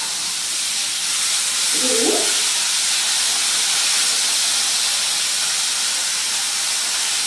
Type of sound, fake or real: real